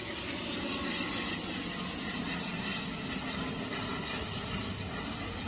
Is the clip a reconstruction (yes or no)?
no